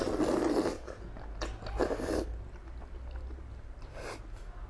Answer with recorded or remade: recorded